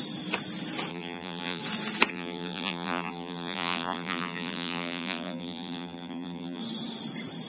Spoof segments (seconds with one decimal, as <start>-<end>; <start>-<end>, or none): 0.9-1.6; 2.1-6.6